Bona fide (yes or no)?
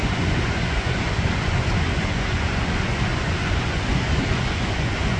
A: no